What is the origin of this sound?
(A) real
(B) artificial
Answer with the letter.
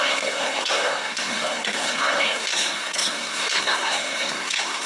B